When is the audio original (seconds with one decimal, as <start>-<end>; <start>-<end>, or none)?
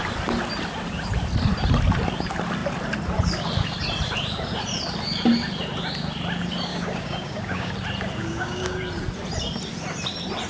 0.0-6.7; 7.7-8.2; 8.8-10.5